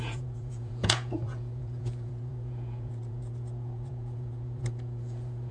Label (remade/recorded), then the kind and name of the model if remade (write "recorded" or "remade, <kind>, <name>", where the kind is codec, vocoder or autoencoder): remade, vocoder, Vocos